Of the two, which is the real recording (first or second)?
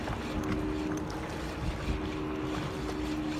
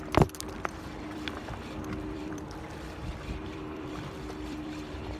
first